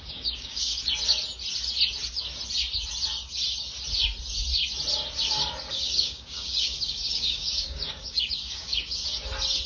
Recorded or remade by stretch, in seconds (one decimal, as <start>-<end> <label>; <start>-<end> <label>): 0.0-0.7 remade; 0.7-5.7 recorded; 5.7-9.0 remade; 9.0-9.7 recorded